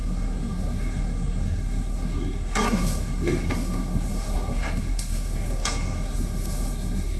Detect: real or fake fake